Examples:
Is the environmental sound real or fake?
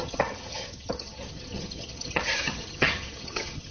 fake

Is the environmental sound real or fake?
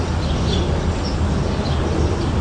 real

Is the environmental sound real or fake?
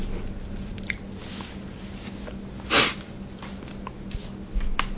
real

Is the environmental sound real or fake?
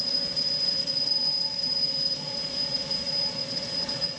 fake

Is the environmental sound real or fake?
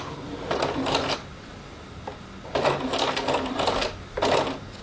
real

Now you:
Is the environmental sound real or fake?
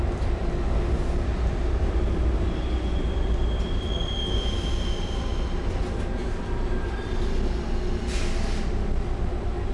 real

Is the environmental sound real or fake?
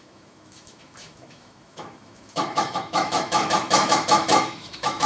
fake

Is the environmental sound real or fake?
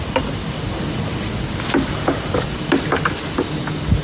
real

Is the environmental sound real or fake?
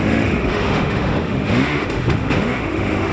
fake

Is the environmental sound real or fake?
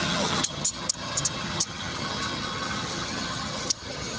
fake